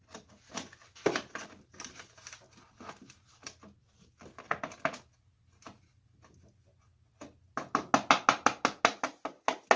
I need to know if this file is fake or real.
real